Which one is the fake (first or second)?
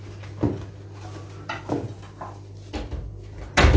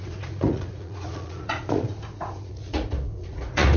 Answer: second